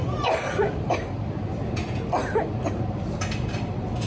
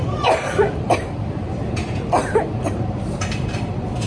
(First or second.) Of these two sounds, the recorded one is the first